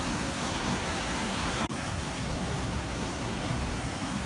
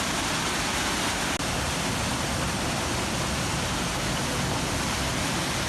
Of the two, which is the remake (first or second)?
first